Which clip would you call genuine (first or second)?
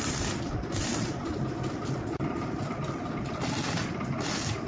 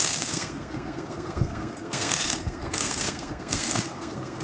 first